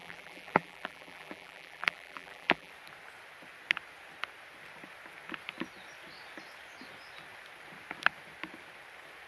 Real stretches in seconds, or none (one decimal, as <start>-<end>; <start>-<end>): 2.7-9.3